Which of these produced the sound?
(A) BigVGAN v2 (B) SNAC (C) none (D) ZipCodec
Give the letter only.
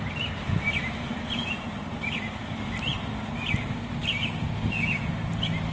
C